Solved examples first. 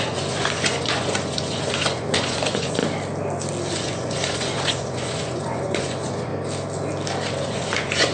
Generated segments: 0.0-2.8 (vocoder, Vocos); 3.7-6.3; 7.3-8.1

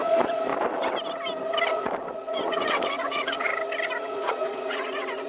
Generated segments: 0.0-0.5 (vocoder, Vocos); 1.7-3.5; 4.0-5.3

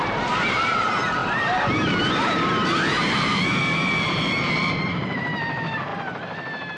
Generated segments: 0.0-5.9 (vocoder, BigVGAN v2)

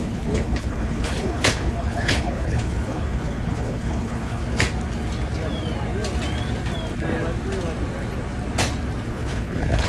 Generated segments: 0.0-4.4 (codec, HILCodec); 9.1-9.9

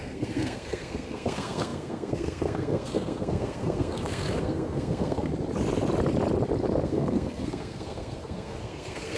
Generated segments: 0.0-5.3 (codec, SNAC); 6.8-9.2